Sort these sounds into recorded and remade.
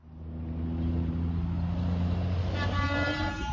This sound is recorded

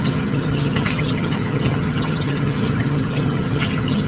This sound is remade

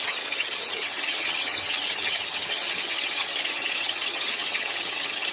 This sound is remade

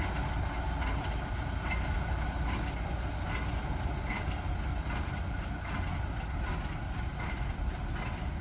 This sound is recorded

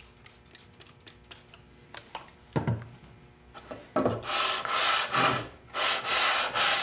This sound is recorded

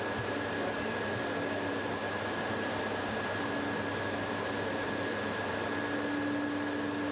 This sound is recorded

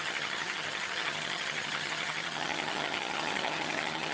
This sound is remade